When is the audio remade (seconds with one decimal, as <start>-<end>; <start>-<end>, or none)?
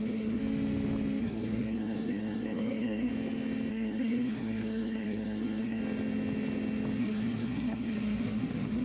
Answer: 0.0-0.4; 1.2-3.1; 3.7-5.8; 7.0-8.8